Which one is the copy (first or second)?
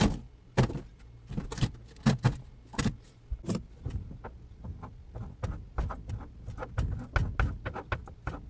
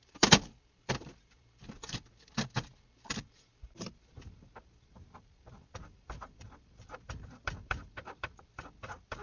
second